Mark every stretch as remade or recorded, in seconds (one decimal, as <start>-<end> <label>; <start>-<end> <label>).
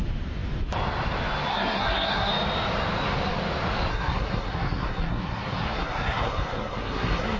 0.0-1.5 recorded; 1.5-2.3 remade; 2.3-3.9 recorded; 3.9-7.4 remade